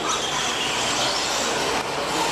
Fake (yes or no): no